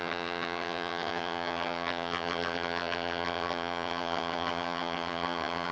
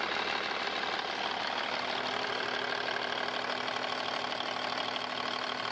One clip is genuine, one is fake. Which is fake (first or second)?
first